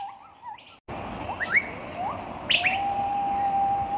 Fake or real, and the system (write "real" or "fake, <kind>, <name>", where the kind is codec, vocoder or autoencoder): real